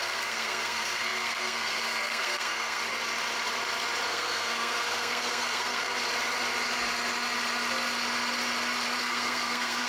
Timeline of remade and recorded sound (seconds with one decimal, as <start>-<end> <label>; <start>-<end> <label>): 0.0-2.8 remade; 2.8-4.1 recorded; 4.1-5.9 remade; 5.9-9.0 recorded; 9.0-9.9 remade